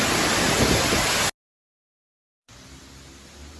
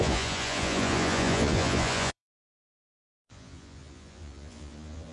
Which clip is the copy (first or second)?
second